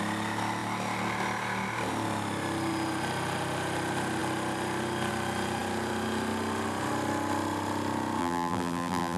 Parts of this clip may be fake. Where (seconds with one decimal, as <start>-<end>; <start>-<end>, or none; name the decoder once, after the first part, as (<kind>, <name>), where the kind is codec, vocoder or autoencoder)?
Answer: 8.2-9.2 (vocoder, BigVGAN v2)